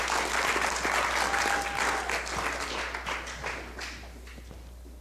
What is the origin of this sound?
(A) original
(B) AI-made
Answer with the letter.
A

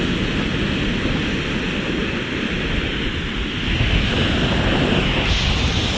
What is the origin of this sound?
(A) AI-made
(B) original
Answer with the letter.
B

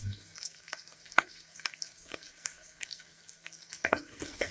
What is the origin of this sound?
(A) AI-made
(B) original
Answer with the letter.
A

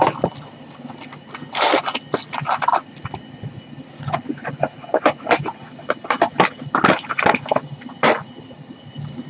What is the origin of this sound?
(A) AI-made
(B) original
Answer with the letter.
B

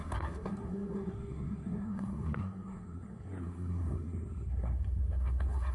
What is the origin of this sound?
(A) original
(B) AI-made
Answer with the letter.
B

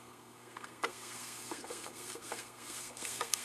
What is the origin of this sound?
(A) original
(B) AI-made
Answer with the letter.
B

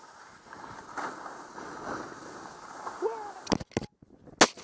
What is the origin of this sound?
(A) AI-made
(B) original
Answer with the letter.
B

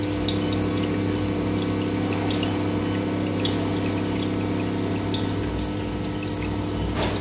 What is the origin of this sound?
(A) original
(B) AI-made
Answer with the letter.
A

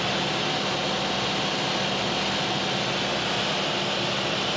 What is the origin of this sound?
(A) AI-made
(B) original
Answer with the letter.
B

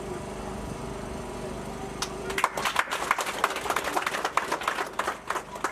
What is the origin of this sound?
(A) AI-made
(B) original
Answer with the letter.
B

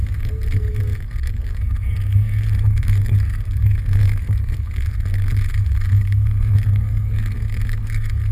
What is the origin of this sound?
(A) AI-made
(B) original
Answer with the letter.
A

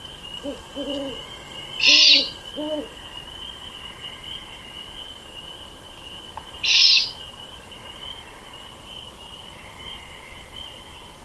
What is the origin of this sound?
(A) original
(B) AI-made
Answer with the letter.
A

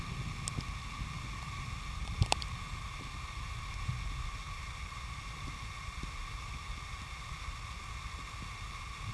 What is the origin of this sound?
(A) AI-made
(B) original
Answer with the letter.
B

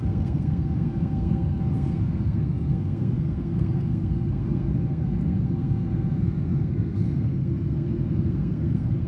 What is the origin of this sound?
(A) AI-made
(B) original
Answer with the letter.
A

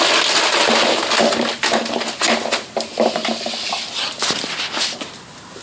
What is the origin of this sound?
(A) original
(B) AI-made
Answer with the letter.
A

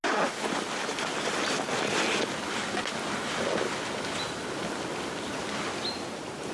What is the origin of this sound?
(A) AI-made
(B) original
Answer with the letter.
B